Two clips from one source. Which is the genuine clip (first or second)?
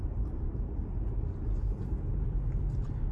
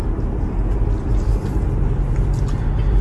second